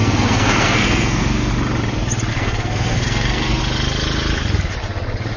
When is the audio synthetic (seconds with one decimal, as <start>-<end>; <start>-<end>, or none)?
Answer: 0.0-1.5; 2.3-3.6